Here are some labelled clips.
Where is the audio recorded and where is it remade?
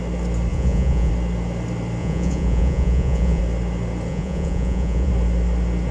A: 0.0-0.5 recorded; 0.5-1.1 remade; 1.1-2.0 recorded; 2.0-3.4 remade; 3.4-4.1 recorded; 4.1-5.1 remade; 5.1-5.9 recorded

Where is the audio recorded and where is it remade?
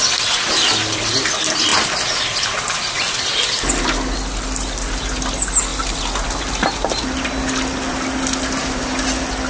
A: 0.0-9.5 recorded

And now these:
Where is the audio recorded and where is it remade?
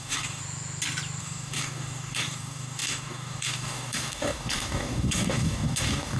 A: 0.0-0.4 remade; 0.4-1.2 recorded; 1.2-6.2 remade